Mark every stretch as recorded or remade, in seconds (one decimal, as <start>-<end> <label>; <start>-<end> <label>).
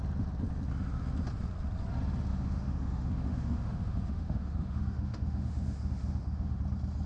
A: 0.0-2.3 recorded; 2.3-6.6 remade; 6.6-7.1 recorded